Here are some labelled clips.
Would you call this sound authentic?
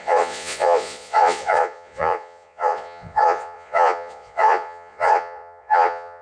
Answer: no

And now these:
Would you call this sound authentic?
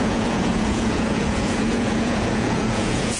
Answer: no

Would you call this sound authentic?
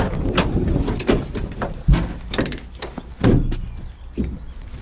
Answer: yes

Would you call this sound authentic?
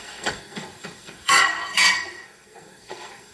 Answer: no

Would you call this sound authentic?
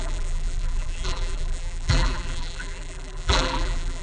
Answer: no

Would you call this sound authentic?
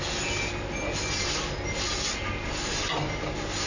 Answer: yes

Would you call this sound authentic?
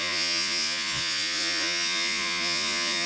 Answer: no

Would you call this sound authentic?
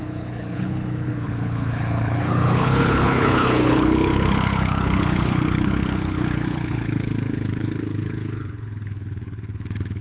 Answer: no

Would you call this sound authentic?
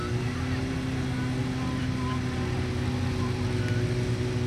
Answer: yes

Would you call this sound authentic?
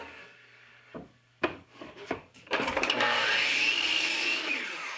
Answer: no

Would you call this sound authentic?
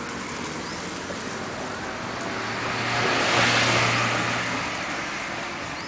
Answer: yes